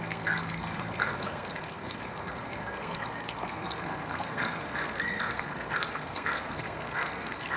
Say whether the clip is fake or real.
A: fake